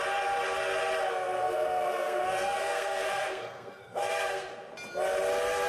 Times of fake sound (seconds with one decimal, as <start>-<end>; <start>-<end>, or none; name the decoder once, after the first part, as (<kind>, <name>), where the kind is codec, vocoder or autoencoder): 1.1-4.5 (codec, SNAC)

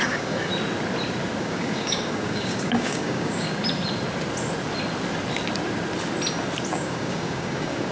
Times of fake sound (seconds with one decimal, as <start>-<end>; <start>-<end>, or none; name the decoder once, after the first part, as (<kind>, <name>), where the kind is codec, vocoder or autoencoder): 0.0-0.5 (codec, DAC); 1.4-3.5; 6.7-7.9